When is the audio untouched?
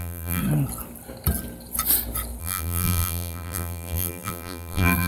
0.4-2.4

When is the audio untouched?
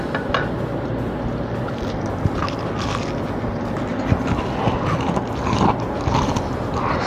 0.0-7.1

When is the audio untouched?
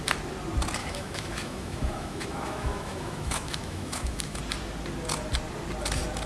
0.0-0.8; 4.4-6.3